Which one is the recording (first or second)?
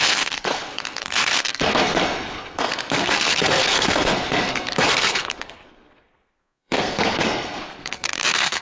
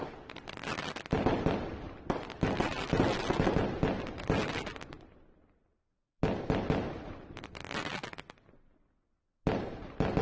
second